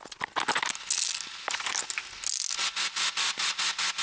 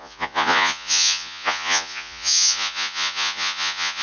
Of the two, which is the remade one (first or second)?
second